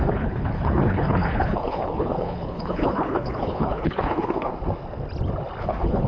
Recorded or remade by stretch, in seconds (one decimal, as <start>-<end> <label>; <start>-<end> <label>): 0.0-4.5 remade; 4.5-5.6 recorded; 5.6-6.1 remade